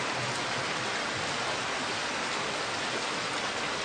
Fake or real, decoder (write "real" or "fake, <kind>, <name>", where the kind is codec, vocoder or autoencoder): real